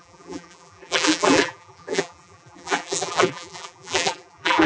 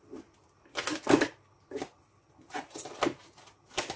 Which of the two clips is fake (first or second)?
first